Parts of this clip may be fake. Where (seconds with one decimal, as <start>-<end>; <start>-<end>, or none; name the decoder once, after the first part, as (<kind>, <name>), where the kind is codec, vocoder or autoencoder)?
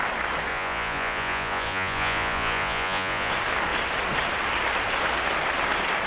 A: 0.5-3.3 (vocoder, Vocos)